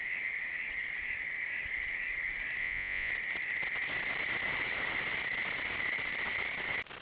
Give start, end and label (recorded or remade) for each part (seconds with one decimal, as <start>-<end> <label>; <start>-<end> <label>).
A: 0.0-2.6 recorded; 2.6-3.1 remade; 3.1-7.0 recorded